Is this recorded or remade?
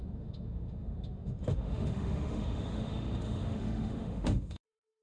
remade